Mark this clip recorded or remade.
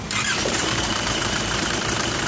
remade